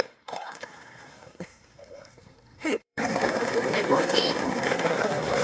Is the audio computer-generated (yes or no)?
yes